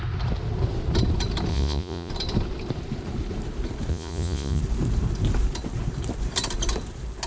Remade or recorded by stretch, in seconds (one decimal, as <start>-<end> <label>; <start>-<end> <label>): 0.0-1.5 recorded; 1.5-2.1 remade; 2.1-3.9 recorded; 3.9-4.6 remade; 4.6-7.3 recorded

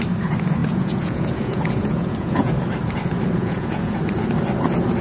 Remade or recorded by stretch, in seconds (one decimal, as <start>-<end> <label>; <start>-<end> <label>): 0.0-0.6 recorded; 0.6-2.5 remade; 2.5-3.4 recorded; 3.4-4.0 remade; 4.0-5.0 recorded

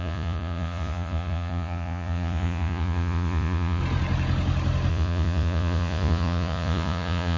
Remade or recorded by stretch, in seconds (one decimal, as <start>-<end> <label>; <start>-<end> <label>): 0.0-3.8 remade; 3.8-4.9 recorded; 4.9-7.4 remade

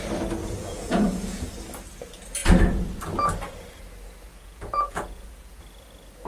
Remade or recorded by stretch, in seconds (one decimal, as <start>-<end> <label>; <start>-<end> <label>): 0.0-0.4 recorded; 0.4-1.5 remade; 1.5-4.3 recorded; 4.3-5.6 remade; 5.6-6.3 recorded

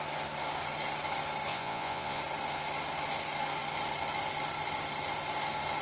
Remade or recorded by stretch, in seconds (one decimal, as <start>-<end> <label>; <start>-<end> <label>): 0.0-1.5 recorded; 1.5-2.2 remade; 2.2-5.8 recorded

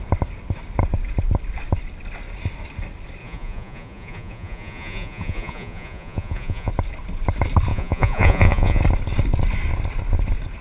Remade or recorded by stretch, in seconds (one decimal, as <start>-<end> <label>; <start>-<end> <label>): 0.0-3.2 recorded; 3.2-6.7 remade; 6.7-7.7 recorded; 7.7-8.8 remade; 8.8-10.6 recorded

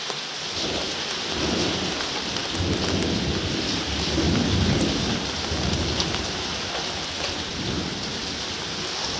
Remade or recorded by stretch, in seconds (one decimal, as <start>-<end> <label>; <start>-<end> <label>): 0.0-9.2 recorded

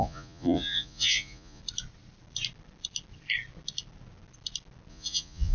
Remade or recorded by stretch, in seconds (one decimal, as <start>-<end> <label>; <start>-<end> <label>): 0.0-1.6 remade; 1.6-4.9 recorded; 4.9-5.5 remade